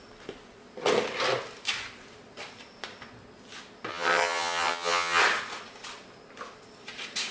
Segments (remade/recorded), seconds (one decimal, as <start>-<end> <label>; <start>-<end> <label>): 0.0-3.9 recorded; 3.9-5.2 remade; 5.2-7.3 recorded